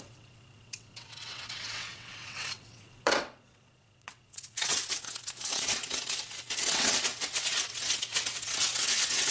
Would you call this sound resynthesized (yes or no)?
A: yes